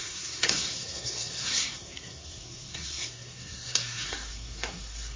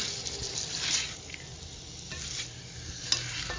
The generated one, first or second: first